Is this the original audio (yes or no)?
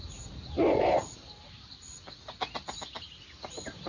yes